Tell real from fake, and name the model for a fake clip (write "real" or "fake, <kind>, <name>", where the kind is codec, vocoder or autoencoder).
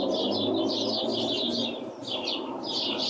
real